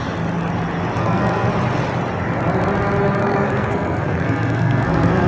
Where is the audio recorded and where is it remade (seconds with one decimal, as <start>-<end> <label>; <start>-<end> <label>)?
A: 0.0-1.0 recorded; 1.0-1.5 remade; 1.5-3.2 recorded; 3.2-5.3 remade